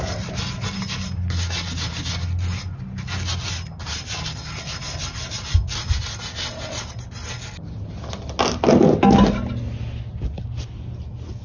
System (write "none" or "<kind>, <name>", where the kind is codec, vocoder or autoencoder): none